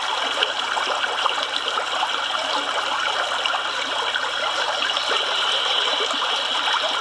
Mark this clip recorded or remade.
recorded